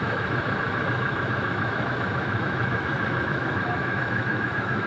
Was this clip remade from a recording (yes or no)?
yes